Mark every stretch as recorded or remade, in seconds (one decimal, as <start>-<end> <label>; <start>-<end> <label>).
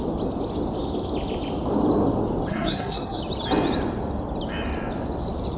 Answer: 0.0-2.5 recorded; 2.5-3.2 remade; 3.2-5.6 recorded